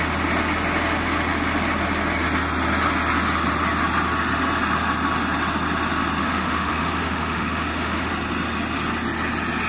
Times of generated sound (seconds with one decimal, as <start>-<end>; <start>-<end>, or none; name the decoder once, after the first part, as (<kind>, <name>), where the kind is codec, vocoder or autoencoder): 6.2-8.1 (autoencoder, DAC-VAE)